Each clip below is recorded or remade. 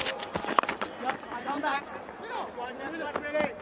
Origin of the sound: recorded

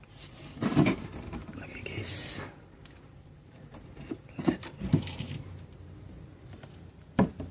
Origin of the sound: remade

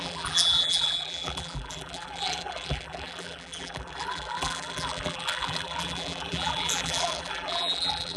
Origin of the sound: remade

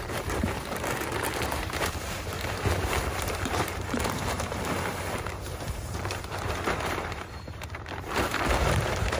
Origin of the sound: remade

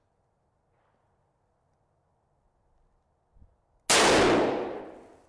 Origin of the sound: recorded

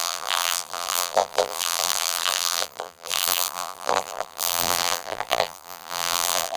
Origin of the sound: remade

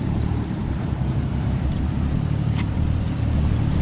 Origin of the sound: remade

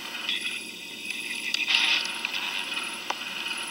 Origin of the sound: recorded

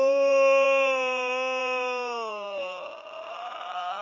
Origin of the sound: remade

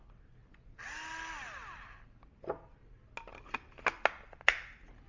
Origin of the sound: recorded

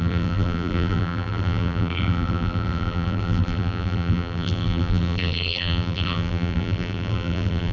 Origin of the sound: remade